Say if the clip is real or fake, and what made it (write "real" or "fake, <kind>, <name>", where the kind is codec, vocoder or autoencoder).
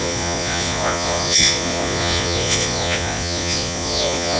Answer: fake, vocoder, Vocos